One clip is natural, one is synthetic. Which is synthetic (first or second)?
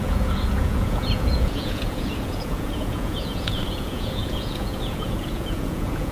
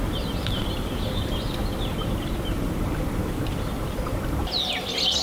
first